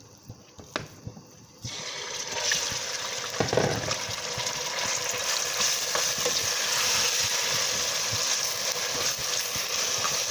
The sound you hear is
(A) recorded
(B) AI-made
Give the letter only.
A